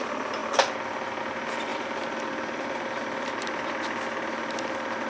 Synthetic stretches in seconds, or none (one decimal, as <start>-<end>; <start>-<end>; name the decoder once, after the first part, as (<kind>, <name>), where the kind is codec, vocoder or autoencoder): none